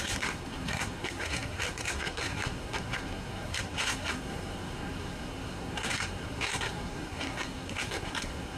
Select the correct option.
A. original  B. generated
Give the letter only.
B